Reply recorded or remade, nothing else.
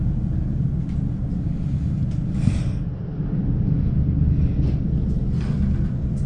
recorded